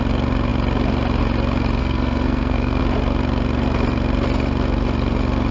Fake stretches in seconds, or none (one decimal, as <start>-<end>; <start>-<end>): 1.8-2.8